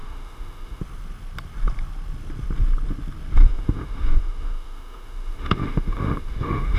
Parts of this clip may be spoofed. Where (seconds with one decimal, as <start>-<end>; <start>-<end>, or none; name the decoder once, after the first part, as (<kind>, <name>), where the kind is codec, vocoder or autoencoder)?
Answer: 0.0-0.8 (autoencoder, DAC-VAE); 3.4-6.8